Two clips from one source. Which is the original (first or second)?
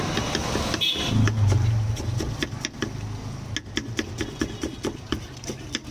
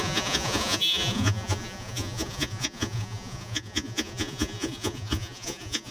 first